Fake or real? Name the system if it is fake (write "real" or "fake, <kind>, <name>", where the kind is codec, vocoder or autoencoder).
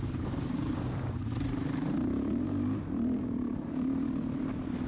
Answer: fake, vocoder, BigVGAN v2